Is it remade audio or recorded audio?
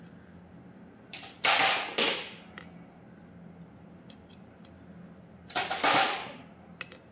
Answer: recorded